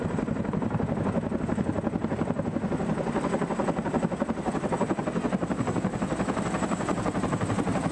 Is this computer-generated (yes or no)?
no